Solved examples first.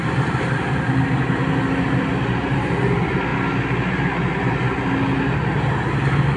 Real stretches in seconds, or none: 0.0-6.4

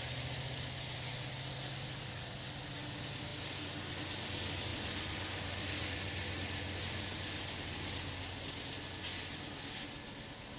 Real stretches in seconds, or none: 0.0-10.6

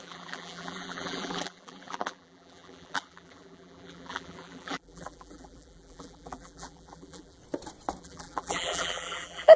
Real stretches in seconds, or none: 7.4-8.0

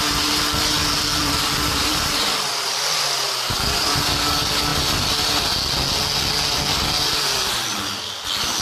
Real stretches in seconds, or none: 0.0-1.2; 3.9-8.6